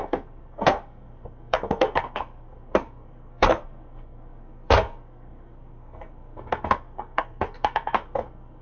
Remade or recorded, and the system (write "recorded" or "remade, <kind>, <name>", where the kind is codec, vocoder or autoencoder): remade, codec, SNAC